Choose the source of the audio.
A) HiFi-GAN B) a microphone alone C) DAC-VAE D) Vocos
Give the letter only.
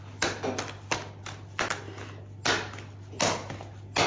B